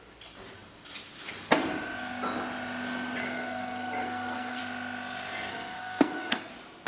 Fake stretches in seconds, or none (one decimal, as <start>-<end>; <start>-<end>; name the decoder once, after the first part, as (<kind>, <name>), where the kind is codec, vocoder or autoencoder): 3.2-4.6 (codec, SNAC); 5.5-6.5